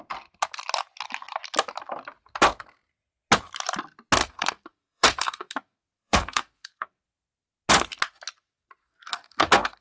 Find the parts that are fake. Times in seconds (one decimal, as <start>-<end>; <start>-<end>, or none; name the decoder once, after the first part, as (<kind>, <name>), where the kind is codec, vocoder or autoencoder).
4.2-7.0 (codec, SNAC); 8.8-9.8